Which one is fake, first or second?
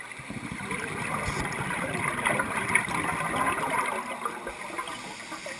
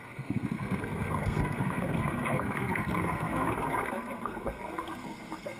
second